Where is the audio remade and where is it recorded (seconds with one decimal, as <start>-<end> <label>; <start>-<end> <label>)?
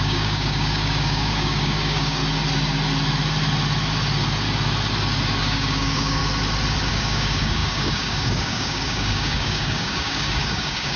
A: 0.0-2.2 remade; 2.2-5.4 recorded; 5.4-6.2 remade; 6.2-6.9 recorded; 6.9-11.0 remade